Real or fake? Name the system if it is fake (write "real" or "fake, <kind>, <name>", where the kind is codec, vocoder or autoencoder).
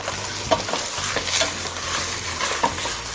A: real